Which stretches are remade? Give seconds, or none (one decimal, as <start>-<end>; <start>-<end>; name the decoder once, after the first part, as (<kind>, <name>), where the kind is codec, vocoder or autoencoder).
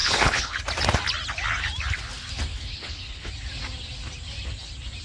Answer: 0.0-0.6 (codec, HILCodec); 2.5-3.3